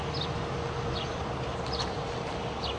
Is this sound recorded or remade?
recorded